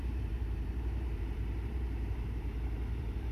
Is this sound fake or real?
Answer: fake